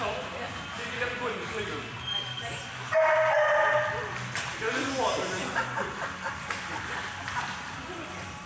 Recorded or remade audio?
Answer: recorded